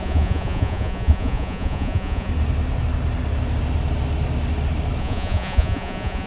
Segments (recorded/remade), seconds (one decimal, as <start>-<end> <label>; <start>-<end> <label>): 0.0-2.3 remade; 2.3-5.0 recorded; 5.0-6.3 remade

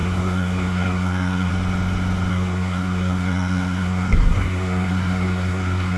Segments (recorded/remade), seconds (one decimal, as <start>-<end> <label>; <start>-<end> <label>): 0.0-1.5 remade; 1.5-2.3 recorded; 2.3-6.0 remade